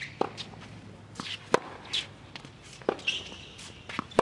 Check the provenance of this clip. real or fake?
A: real